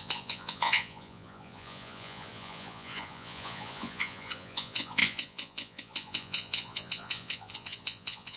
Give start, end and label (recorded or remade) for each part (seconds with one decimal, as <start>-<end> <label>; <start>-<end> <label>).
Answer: 0.0-8.4 remade